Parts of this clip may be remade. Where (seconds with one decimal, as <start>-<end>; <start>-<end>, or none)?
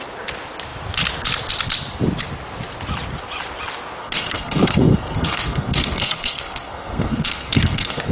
4.0-8.1